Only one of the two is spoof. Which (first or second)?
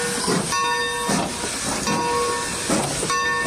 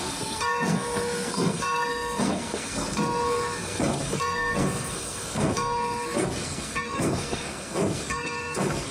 second